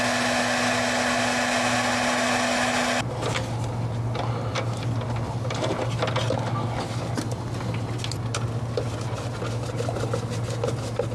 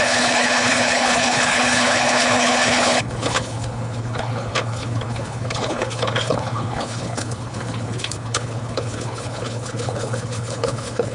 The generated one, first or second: second